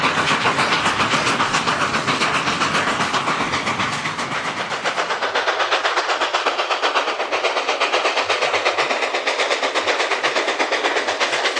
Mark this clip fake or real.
real